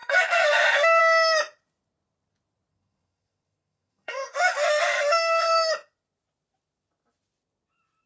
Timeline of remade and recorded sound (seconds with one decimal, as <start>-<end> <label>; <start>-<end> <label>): 0.0-1.0 remade; 1.0-2.7 recorded; 2.7-5.7 remade; 5.7-8.1 recorded